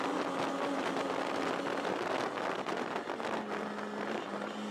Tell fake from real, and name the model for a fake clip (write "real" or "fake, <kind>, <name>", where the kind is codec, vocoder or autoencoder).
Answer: real